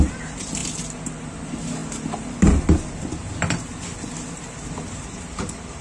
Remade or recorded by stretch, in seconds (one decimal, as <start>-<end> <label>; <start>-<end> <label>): 0.0-5.8 recorded